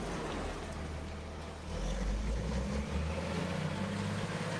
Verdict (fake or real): real